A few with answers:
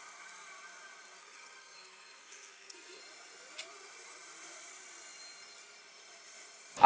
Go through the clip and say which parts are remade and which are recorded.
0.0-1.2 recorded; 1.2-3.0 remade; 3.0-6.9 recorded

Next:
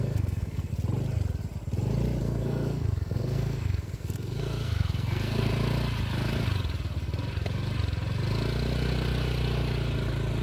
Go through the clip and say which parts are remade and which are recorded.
0.0-0.7 remade; 0.7-2.2 recorded; 2.2-5.5 remade; 5.5-10.4 recorded

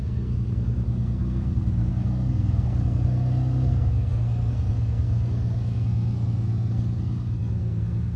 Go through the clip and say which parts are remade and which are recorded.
0.0-8.2 remade

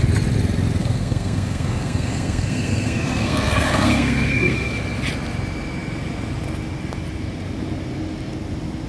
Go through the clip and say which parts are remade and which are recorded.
0.0-0.8 recorded; 0.8-4.7 remade; 4.7-8.9 recorded